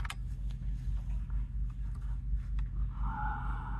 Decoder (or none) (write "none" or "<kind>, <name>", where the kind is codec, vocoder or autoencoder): none